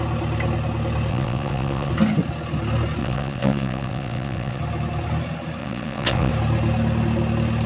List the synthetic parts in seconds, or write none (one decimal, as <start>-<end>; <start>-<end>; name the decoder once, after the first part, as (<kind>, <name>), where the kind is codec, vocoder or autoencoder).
1.1-1.9 (vocoder, WaveNeXt); 3.0-4.6; 5.6-6.3